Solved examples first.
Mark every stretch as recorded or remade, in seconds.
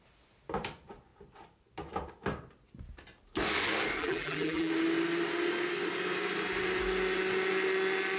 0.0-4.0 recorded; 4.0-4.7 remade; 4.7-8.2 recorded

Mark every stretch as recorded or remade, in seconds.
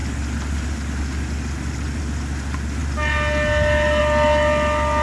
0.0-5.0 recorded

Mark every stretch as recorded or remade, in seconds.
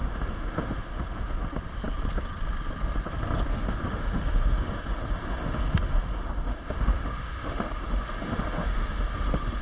0.0-1.5 remade; 1.5-3.5 recorded; 3.5-9.6 remade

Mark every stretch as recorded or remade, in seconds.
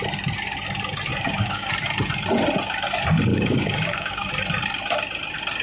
0.0-1.1 recorded; 1.1-1.7 remade; 1.7-3.3 recorded; 3.3-4.3 remade; 4.3-5.6 recorded